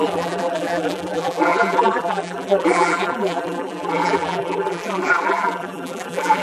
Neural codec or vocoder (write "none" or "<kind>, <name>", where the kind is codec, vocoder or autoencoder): vocoder, BigVGAN v2